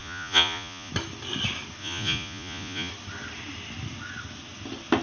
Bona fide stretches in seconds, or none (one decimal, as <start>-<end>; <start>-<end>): 0.9-1.8; 2.9-5.0